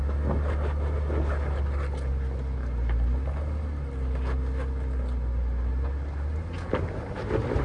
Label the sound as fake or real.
real